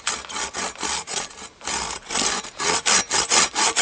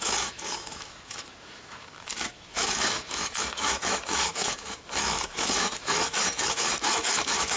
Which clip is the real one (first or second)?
first